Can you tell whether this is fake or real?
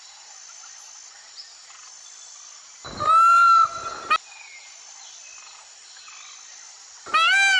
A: real